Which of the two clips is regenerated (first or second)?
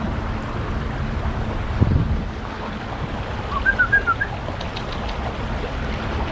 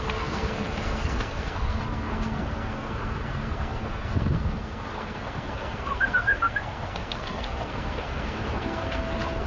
second